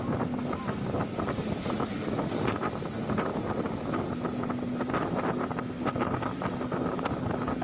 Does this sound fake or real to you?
real